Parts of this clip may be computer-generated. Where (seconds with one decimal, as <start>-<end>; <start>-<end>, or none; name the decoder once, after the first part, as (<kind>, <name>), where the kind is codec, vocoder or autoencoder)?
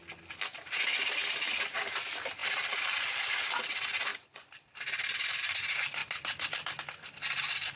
2.4-3.2 (vocoder, BigVGAN v2); 4.1-4.8; 6.0-6.8